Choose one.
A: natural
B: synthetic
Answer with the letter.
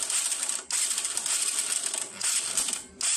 A